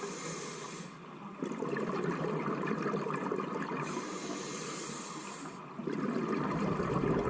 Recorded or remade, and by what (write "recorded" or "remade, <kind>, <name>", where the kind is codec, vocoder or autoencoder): recorded